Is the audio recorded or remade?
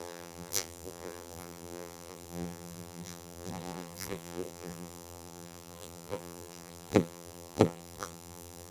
remade